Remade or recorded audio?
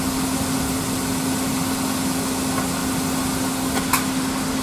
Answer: recorded